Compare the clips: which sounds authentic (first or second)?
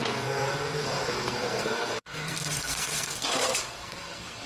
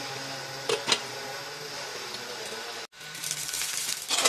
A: second